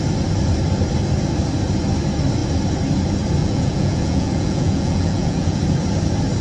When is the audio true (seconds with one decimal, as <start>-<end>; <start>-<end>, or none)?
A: 0.0-3.4; 5.6-6.4